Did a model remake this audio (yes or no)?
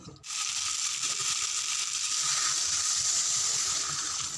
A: no